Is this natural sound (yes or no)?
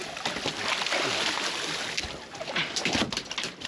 yes